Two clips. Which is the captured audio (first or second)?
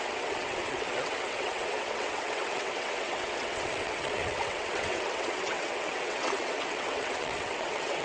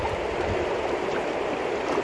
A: second